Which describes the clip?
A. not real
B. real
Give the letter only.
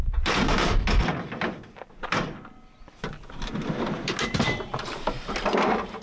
A